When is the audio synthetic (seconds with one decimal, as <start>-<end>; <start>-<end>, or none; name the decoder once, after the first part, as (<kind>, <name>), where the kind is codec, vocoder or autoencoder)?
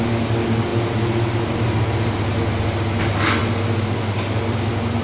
none